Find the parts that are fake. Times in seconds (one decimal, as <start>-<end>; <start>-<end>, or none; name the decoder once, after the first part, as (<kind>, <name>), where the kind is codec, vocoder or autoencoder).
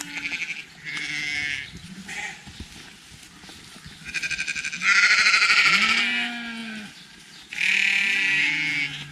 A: none